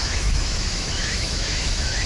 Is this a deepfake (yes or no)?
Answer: yes